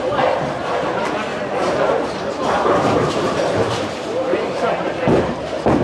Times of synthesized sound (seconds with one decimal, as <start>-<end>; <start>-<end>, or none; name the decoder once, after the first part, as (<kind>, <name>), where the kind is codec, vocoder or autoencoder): 1.3-3.8 (vocoder, BigVGAN v2); 4.3-5.2